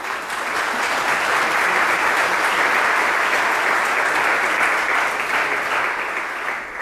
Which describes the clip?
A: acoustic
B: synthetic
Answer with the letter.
A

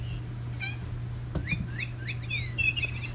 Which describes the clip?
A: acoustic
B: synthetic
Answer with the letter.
A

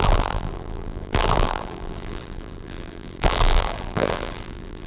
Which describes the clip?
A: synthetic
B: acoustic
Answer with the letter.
A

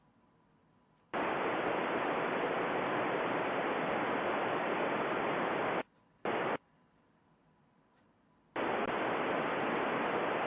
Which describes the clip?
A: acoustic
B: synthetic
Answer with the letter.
B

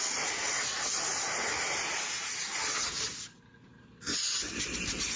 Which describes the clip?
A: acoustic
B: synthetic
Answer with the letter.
A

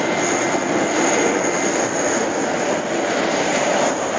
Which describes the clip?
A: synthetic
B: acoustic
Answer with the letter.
B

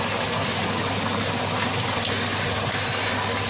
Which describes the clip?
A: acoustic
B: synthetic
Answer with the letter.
A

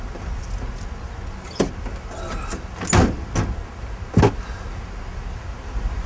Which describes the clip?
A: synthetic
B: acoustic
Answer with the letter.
B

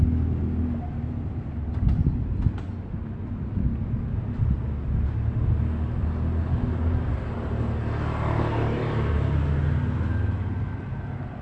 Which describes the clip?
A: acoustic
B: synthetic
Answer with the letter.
A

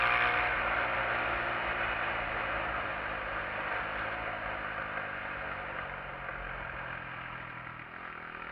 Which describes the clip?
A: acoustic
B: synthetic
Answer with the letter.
A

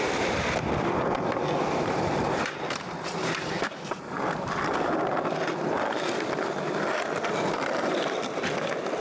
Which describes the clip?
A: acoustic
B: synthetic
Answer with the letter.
B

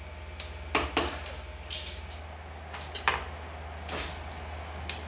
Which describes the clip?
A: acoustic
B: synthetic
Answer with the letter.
A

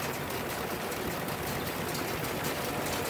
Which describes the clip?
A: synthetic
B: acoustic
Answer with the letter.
B